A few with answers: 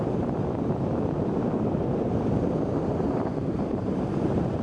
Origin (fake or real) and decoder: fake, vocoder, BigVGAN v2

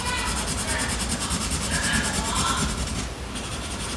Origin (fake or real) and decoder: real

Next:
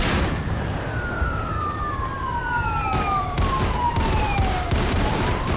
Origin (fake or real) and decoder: fake, vocoder, BigVGAN v2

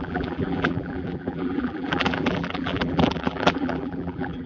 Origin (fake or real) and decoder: fake, vocoder, BigVGAN v2